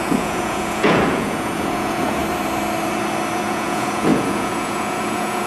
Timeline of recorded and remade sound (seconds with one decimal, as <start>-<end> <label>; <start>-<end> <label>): 0.0-2.2 remade; 2.2-3.4 recorded; 3.4-5.5 remade